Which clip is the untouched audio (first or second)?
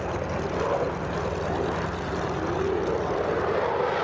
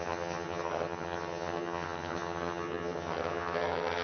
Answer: first